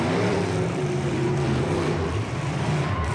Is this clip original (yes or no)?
no